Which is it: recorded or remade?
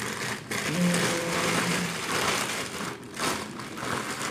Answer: recorded